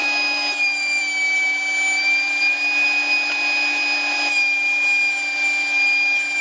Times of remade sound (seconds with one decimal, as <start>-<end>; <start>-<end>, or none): 0.0-1.0